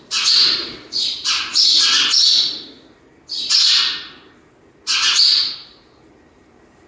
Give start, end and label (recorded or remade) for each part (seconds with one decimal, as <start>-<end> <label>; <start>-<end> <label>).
0.0-1.5 remade; 1.5-5.4 recorded; 5.4-6.9 remade